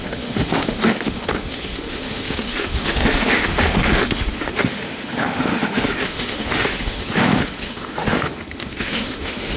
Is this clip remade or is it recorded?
remade